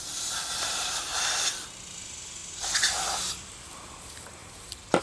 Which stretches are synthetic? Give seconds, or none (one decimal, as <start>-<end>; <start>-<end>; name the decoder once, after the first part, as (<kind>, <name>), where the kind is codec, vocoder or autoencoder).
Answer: 0.0-4.4 (vocoder, BigVGAN v2)